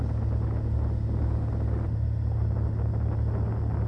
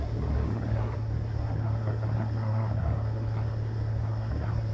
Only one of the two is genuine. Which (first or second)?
first